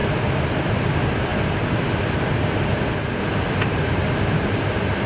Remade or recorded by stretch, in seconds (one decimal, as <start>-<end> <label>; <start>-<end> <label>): 0.0-5.1 recorded